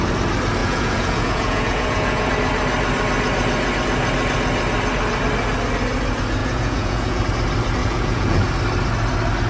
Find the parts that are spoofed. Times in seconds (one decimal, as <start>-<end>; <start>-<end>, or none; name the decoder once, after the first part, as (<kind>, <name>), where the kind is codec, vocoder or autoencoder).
0.6-2.3 (vocoder, Vocos); 6.4-7.2; 7.8-8.5